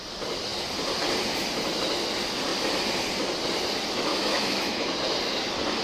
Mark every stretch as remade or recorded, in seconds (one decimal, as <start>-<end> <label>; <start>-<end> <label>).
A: 0.0-4.1 recorded; 4.1-4.9 remade; 4.9-5.8 recorded